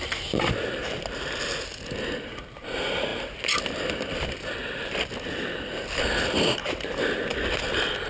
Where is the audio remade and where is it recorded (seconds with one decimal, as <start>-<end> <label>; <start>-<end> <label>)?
0.0-8.1 recorded